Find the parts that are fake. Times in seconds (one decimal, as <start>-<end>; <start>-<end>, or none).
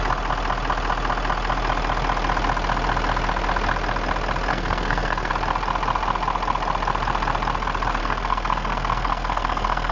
4.5-5.3; 8.0-9.9